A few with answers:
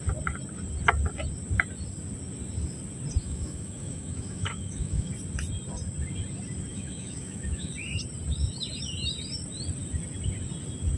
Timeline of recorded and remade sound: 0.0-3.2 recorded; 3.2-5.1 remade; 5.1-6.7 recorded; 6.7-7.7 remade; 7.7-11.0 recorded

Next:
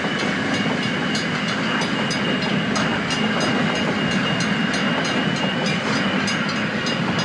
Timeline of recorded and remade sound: 0.0-7.2 recorded

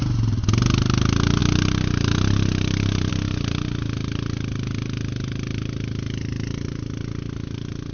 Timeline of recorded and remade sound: 0.0-7.9 recorded

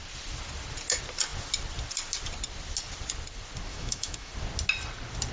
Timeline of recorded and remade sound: 0.0-3.7 recorded; 3.7-4.3 remade; 4.3-5.3 recorded

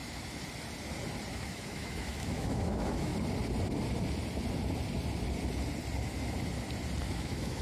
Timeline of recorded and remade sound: 0.0-1.3 recorded; 1.3-3.1 remade; 3.1-7.1 recorded; 7.1-7.6 remade

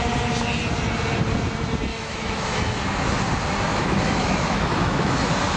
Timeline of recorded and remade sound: 0.0-1.9 recorded; 1.9-2.6 remade; 2.6-3.7 recorded; 3.7-5.1 remade; 5.1-5.6 recorded